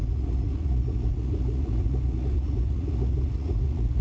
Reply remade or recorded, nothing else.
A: remade